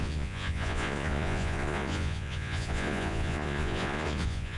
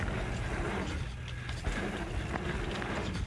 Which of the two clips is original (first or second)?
second